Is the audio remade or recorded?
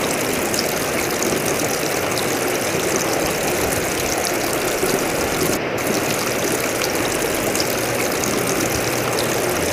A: recorded